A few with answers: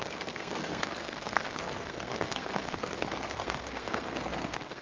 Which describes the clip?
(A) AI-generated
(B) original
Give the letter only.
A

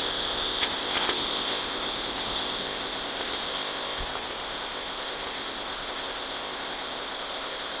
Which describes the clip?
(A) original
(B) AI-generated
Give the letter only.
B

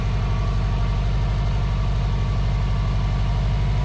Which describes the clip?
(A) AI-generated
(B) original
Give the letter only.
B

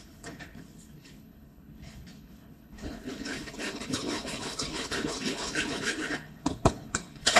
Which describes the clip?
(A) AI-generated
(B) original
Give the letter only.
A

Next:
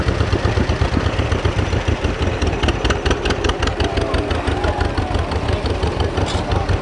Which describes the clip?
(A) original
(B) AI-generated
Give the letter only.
A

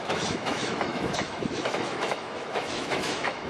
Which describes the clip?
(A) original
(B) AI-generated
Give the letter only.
B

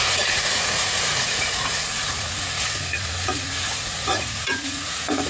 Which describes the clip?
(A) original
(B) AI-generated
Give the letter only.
B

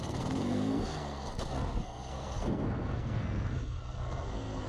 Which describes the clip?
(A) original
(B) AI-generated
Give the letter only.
B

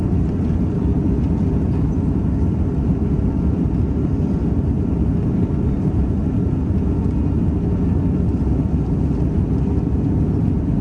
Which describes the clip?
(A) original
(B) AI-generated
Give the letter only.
A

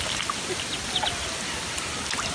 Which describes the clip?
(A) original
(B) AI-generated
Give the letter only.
A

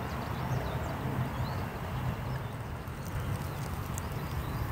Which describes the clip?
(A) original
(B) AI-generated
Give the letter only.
A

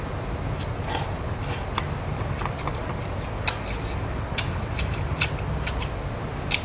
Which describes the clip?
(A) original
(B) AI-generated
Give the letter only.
A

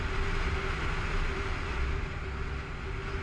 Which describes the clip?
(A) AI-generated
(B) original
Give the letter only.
B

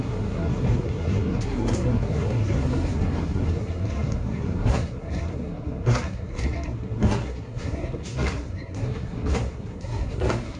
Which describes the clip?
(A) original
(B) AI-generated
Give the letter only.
B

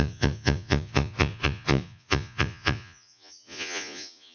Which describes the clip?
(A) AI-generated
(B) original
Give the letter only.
A